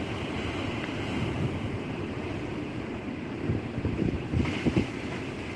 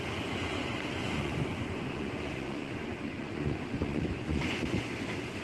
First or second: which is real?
first